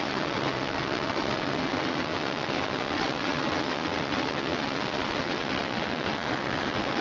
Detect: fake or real fake